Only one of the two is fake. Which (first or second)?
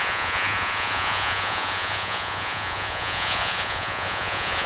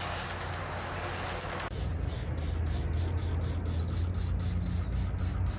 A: first